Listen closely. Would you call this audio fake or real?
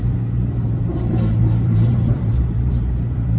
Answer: fake